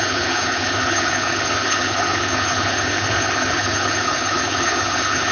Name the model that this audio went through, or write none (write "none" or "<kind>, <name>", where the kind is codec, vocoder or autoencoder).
codec, HILCodec